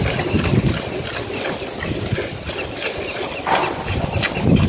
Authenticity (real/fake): real